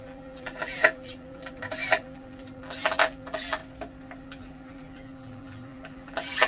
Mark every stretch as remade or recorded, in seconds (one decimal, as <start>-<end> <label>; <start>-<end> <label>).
0.0-3.6 remade; 3.6-4.2 recorded; 4.2-6.5 remade